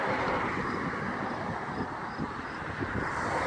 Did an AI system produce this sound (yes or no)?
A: no